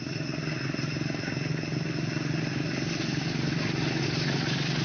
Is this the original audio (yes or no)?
yes